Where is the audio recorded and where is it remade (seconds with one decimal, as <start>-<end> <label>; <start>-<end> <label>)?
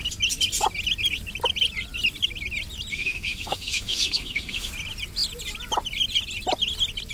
0.0-2.9 recorded; 2.9-4.7 remade; 4.7-7.1 recorded